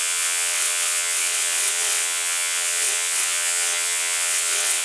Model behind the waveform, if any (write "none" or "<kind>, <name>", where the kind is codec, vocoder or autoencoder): vocoder, WaveNeXt